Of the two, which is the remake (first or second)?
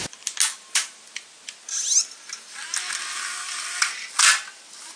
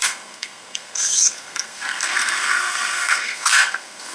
second